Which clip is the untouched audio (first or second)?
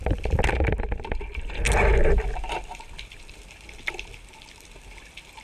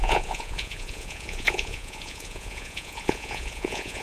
first